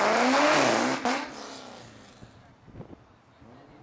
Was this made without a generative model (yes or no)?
yes